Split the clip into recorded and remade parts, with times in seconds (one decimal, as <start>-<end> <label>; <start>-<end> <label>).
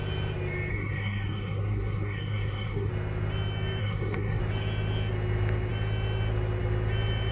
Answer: 0.0-0.7 recorded; 0.7-2.9 remade; 2.9-3.8 recorded; 3.8-4.4 remade; 4.4-7.3 recorded